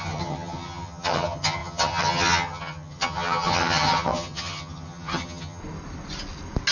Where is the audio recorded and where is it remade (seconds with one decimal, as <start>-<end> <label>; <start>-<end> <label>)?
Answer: 0.0-5.6 remade; 5.6-6.7 recorded